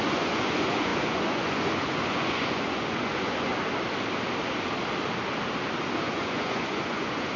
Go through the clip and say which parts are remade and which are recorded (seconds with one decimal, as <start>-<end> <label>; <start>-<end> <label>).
0.0-3.5 remade; 3.5-6.0 recorded; 6.0-7.4 remade